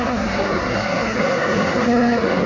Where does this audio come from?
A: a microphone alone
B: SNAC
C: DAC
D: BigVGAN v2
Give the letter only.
B